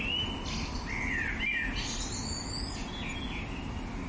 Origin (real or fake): real